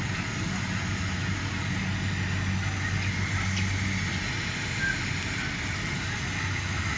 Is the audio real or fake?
real